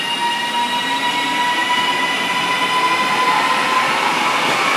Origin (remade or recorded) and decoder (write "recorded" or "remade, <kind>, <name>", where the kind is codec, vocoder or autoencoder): recorded